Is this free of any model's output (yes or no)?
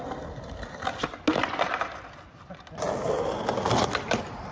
yes